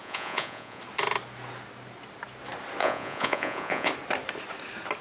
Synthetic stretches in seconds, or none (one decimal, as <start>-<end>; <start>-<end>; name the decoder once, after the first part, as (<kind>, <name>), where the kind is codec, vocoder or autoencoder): 0.0-0.8 (vocoder, Vocos); 2.8-3.9